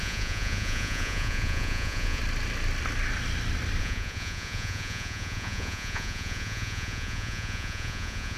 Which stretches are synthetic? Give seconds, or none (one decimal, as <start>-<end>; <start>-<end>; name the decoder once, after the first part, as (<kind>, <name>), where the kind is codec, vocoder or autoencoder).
0.0-2.2 (vocoder, Vocos); 3.8-8.4